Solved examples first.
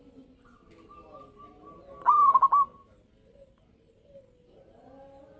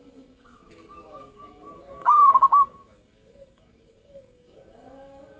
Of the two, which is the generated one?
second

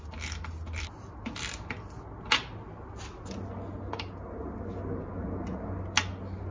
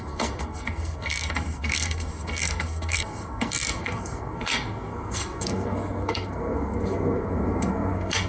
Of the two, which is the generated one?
second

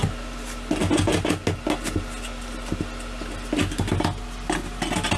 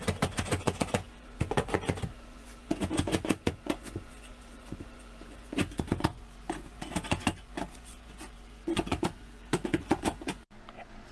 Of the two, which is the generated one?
second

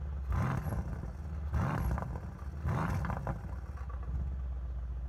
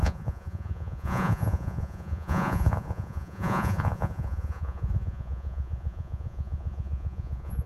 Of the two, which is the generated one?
second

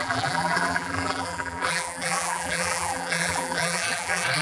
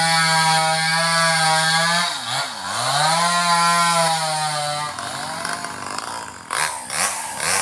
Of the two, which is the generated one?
first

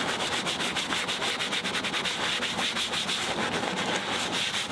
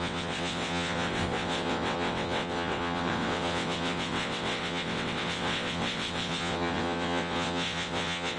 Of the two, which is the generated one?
second